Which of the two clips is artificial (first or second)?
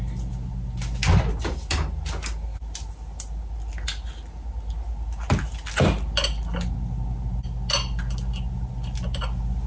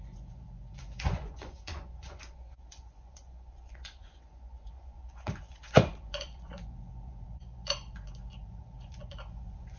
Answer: second